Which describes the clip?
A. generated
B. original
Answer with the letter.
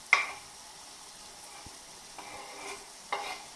B